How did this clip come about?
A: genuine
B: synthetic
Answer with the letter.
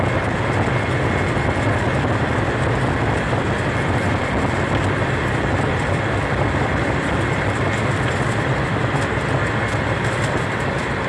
B